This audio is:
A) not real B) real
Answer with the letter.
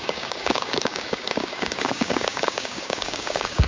A